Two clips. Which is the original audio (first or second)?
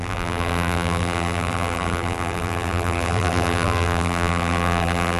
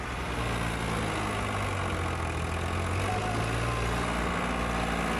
second